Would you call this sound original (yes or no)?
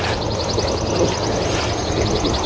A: yes